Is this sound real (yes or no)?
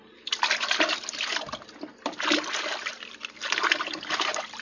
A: yes